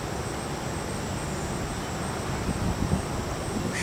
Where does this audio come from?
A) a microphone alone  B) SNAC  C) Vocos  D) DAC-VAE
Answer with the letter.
A